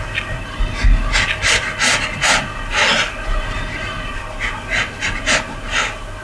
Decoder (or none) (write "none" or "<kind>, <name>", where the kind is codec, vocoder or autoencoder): none